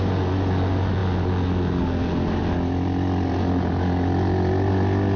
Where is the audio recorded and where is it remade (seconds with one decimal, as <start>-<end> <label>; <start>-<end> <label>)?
0.0-5.2 recorded